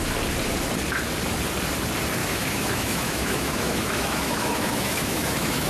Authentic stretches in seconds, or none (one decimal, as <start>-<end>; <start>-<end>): 0.0-2.2